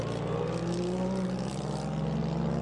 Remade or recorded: recorded